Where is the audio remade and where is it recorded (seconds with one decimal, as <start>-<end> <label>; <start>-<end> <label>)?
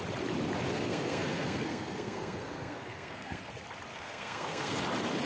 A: 0.0-0.7 recorded; 0.7-3.5 remade; 3.5-3.9 recorded; 3.9-4.8 remade; 4.8-5.3 recorded